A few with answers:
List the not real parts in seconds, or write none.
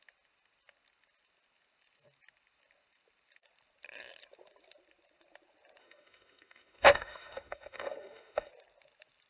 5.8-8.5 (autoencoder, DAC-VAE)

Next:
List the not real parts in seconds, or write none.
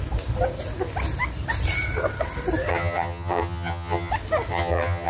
2.7-4.1 (vocoder, HiFi-GAN); 4.5-5.1